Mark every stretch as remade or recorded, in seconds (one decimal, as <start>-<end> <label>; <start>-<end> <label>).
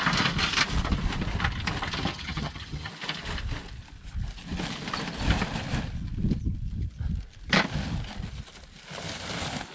0.0-2.1 recorded; 2.1-2.9 remade; 2.9-9.7 recorded